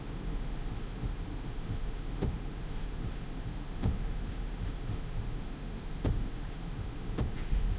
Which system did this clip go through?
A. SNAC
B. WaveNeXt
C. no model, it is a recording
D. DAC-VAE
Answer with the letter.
D